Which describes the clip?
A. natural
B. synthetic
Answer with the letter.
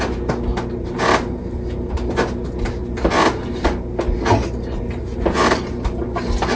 A